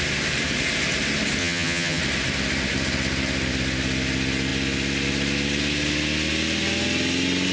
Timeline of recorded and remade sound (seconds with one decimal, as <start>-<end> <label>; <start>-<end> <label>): 0.0-1.4 recorded; 1.4-2.0 remade; 2.0-7.5 recorded